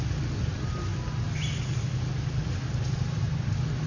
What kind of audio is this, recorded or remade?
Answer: recorded